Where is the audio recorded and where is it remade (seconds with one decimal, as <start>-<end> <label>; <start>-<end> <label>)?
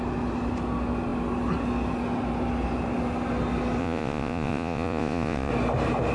0.0-3.8 recorded; 3.8-5.5 remade; 5.5-6.1 recorded